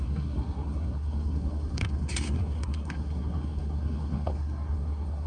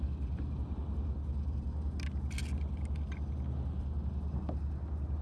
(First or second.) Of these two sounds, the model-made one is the first